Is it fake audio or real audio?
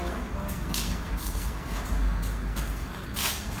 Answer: fake